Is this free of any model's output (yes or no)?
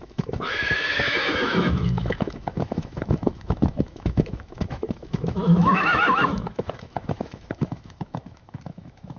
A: no